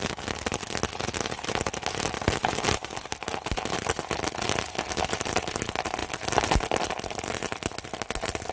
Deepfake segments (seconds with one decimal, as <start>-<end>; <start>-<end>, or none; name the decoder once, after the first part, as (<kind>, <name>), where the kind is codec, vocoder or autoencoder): none